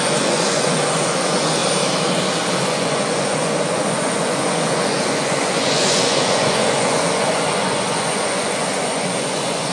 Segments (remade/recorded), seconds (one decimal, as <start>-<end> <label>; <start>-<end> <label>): 0.0-1.6 remade; 1.6-2.6 recorded; 2.6-9.7 remade